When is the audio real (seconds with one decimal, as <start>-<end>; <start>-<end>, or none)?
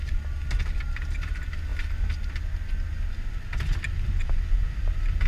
0.0-5.3